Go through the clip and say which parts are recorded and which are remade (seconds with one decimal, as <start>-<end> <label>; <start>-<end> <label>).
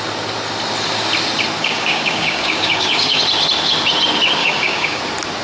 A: 0.0-1.6 recorded; 1.6-3.2 remade; 3.2-4.4 recorded; 4.4-5.0 remade; 5.0-5.4 recorded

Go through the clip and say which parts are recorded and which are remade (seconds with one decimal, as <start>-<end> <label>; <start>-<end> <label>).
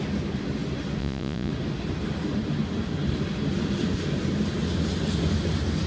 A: 0.0-1.0 recorded; 1.0-1.5 remade; 1.5-5.9 recorded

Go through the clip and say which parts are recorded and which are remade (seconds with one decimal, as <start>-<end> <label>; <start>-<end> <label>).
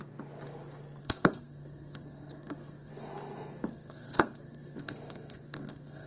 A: 0.0-1.0 recorded; 1.0-2.9 remade; 2.9-3.7 recorded; 3.7-6.1 remade